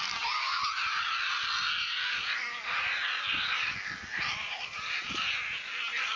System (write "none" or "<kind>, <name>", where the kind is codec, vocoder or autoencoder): none